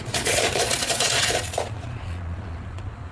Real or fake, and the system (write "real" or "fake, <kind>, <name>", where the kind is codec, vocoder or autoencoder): fake, vocoder, Vocos